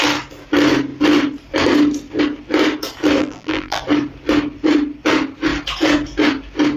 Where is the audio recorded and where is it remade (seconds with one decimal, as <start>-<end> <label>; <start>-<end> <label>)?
0.0-3.2 recorded; 3.2-3.8 remade; 3.8-6.8 recorded